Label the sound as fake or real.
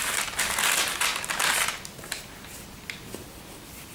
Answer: real